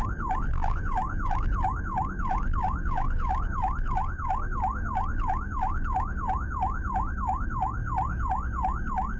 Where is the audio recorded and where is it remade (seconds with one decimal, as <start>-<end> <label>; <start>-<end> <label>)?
0.0-7.8 remade; 7.8-9.2 recorded